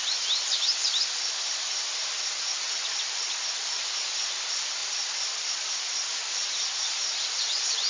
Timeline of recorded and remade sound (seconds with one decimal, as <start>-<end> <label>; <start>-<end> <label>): 0.0-4.8 recorded; 4.8-6.3 remade; 6.3-7.9 recorded